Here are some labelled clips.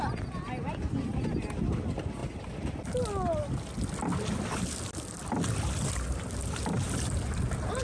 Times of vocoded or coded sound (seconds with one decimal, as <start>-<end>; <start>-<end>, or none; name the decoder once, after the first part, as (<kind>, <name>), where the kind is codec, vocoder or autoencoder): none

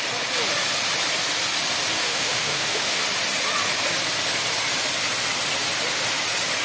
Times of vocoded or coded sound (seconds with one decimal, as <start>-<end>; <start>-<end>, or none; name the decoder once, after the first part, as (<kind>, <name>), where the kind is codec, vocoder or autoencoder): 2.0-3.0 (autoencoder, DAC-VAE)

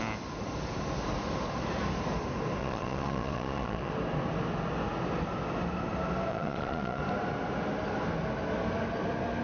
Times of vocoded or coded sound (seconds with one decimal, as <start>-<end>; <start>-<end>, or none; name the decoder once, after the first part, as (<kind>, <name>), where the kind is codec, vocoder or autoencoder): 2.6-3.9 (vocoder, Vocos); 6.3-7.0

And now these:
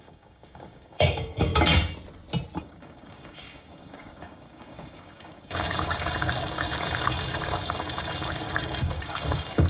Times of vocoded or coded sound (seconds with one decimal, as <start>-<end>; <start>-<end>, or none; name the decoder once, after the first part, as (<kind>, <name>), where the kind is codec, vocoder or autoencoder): 0.0-1.5 (codec, DAC); 2.6-9.7

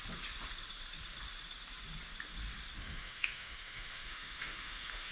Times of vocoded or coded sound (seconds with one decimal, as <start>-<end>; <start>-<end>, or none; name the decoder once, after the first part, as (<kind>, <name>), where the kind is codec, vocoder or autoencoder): 2.8-5.1 (autoencoder, DAC-VAE)

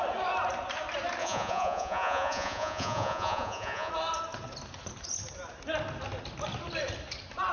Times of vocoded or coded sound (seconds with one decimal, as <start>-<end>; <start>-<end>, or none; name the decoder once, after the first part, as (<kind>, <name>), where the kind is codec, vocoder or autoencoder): 1.2-3.9 (vocoder, Vocos)

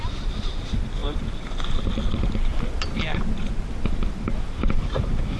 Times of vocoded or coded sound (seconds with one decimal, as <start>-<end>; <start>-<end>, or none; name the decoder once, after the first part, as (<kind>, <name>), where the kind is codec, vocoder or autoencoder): 1.0-1.7 (vocoder, BigVGAN v2); 2.5-3.0

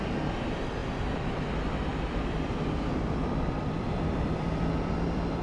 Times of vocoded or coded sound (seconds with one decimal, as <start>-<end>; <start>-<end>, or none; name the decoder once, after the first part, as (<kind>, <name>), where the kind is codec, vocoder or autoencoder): 0.8-1.5 (vocoder, BigVGAN v2); 1.9-5.4